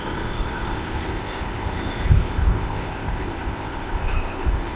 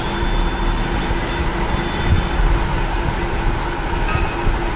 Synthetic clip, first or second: first